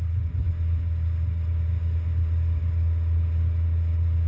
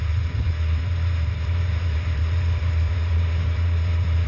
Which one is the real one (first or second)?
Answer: first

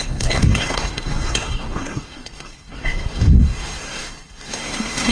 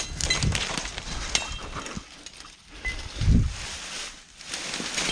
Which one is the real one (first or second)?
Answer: second